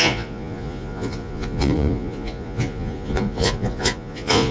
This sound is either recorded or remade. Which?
remade